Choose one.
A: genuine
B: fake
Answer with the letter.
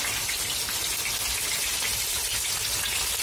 A